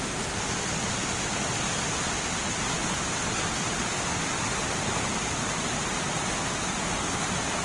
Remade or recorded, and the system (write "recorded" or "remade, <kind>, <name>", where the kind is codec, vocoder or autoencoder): recorded